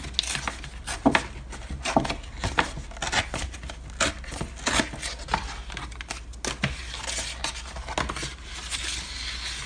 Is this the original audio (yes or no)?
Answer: yes